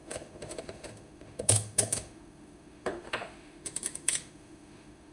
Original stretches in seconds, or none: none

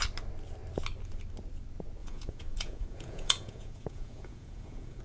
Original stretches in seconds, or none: 0.0-2.0

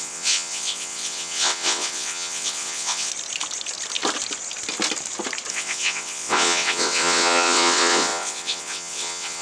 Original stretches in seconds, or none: 3.1-5.5

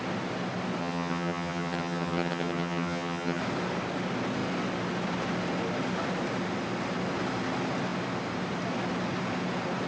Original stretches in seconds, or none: 0.0-0.8; 3.4-9.9

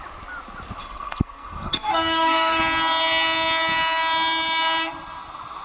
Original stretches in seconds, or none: 0.0-0.8; 2.6-5.6

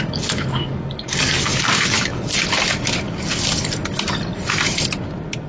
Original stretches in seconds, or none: 2.3-5.5

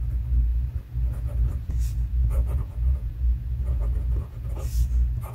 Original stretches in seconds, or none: 0.0-2.2; 4.5-5.3